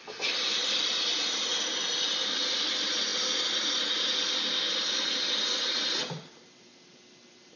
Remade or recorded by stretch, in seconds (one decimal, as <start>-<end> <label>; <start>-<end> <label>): 0.0-7.6 recorded